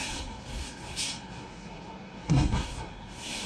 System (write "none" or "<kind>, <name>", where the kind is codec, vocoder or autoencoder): codec, SNAC